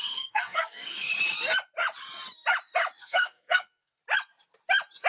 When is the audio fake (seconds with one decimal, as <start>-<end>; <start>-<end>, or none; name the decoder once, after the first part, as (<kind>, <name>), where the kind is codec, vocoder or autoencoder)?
0.0-1.1 (codec, SNAC); 3.0-4.0